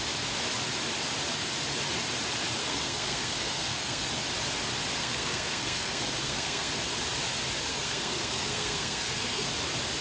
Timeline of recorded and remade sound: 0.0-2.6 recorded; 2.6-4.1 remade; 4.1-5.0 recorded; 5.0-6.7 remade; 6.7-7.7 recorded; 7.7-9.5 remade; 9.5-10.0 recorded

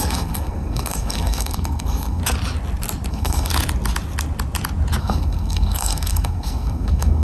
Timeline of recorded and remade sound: 0.0-2.2 remade; 2.2-3.1 recorded; 3.1-3.5 remade; 3.5-5.0 recorded; 5.0-7.2 remade

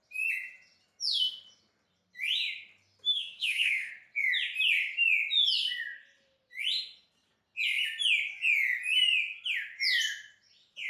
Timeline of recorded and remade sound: 0.0-3.1 recorded; 3.1-3.9 remade; 3.9-10.9 recorded

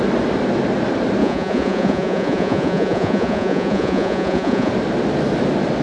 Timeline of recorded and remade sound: 0.0-1.2 recorded; 1.2-4.7 remade; 4.7-5.8 recorded

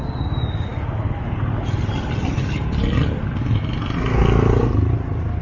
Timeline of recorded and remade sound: 0.0-5.4 recorded

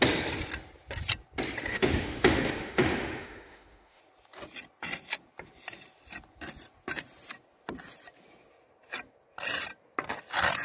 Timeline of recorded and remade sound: 0.0-1.7 recorded; 1.7-4.0 remade; 4.0-10.6 recorded

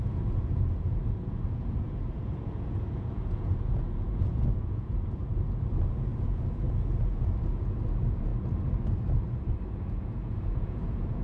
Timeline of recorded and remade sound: 0.0-8.3 remade; 8.3-9.8 recorded; 9.8-11.2 remade

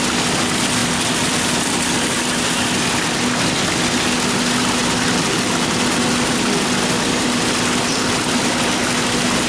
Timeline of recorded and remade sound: 0.0-9.5 recorded